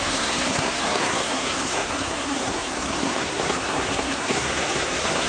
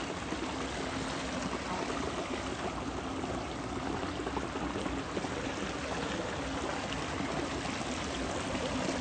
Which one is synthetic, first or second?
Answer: first